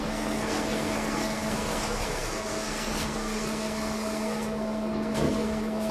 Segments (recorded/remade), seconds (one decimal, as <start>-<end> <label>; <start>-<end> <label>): 0.0-5.9 remade